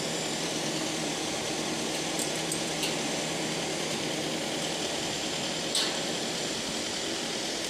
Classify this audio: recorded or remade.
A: remade